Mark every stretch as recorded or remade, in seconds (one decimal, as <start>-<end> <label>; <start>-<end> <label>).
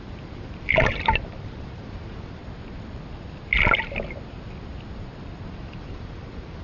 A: 0.0-2.4 remade; 2.4-5.5 recorded; 5.5-6.6 remade